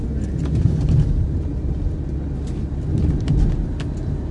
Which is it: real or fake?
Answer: real